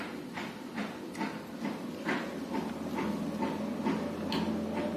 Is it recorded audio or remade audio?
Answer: recorded